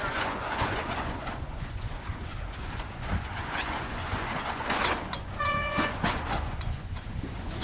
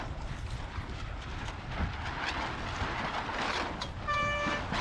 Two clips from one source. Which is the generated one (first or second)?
first